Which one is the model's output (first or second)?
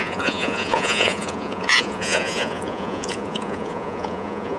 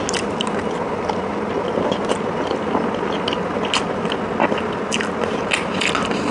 first